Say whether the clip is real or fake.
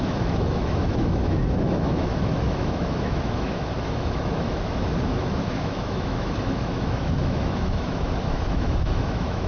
fake